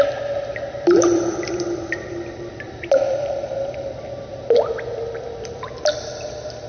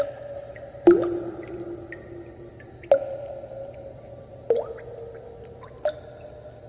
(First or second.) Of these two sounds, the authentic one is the second